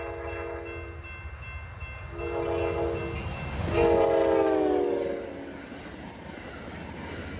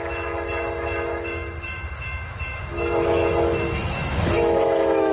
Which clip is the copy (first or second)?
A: second